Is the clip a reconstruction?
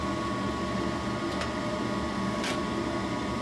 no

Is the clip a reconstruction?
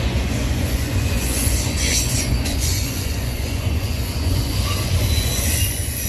yes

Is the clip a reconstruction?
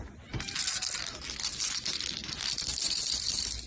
no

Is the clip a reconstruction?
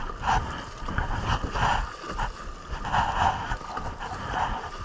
no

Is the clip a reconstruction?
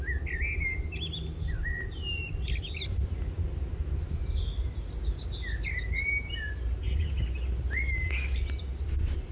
no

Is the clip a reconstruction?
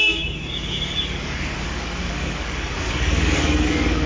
yes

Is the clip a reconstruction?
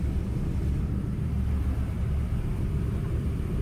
yes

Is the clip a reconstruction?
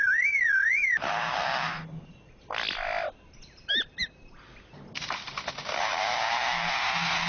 no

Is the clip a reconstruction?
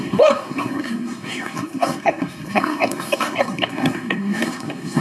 yes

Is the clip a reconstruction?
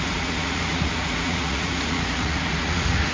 yes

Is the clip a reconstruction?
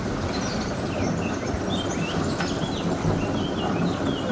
no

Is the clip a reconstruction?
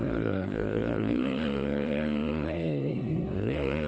yes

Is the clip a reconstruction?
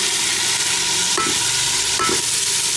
no